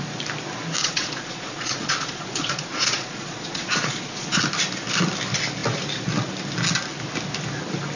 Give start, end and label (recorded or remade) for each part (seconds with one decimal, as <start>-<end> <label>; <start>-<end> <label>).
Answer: 0.0-0.8 recorded; 0.8-4.4 remade; 4.4-8.0 recorded